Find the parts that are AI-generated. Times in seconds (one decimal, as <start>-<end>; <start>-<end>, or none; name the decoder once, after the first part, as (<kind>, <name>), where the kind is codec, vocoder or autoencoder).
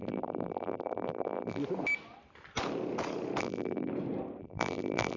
0.0-1.6 (vocoder, BigVGAN v2); 3.4-3.9; 4.4-5.2